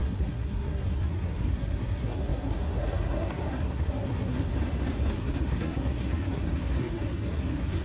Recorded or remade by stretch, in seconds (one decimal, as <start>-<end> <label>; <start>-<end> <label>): 0.0-4.5 remade; 4.5-5.1 recorded; 5.1-7.8 remade